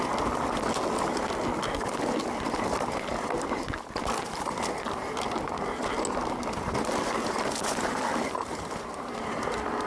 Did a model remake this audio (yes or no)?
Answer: no